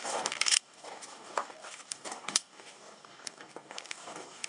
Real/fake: fake